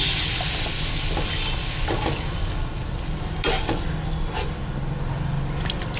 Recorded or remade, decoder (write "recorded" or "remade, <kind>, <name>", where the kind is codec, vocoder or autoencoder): recorded